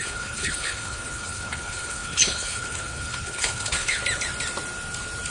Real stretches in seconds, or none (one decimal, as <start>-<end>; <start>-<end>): 4.0-5.3